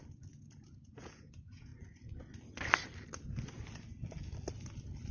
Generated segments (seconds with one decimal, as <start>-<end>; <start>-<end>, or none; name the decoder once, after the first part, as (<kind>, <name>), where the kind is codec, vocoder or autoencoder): 0.6-1.7 (vocoder, Vocos)

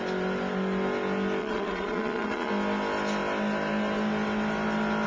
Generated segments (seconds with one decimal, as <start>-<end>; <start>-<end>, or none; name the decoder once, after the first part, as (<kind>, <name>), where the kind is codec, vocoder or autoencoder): 1.4-2.5 (vocoder, Vocos)